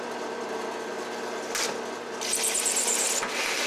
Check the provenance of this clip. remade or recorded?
recorded